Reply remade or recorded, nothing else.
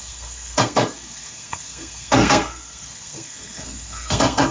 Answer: remade